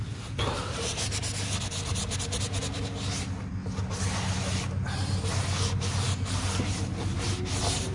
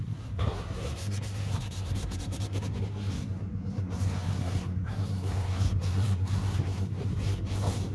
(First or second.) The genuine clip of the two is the first